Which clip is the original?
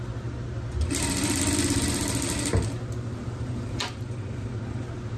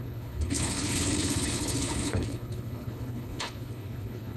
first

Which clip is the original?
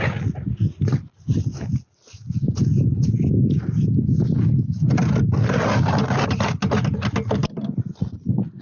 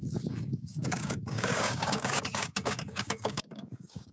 first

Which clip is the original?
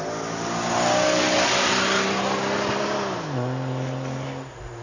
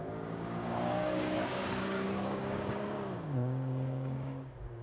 first